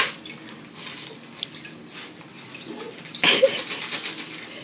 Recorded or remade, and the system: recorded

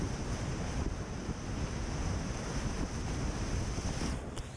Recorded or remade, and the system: recorded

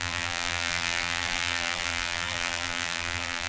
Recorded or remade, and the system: remade, vocoder, BigVGAN v2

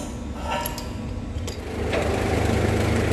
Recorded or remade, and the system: recorded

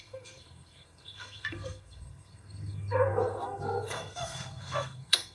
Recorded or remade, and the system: remade, codec, SNAC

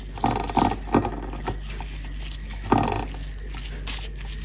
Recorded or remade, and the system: recorded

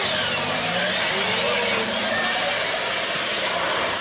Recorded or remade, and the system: recorded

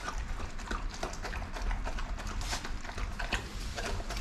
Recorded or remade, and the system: recorded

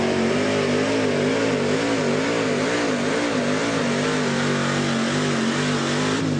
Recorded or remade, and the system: recorded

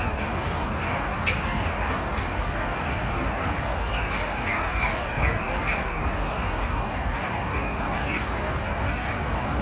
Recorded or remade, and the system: remade, codec, DAC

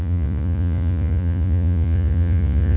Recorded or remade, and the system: remade, vocoder, Vocos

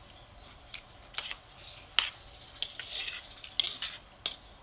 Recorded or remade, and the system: recorded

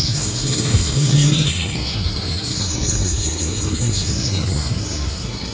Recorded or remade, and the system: remade, codec, SNAC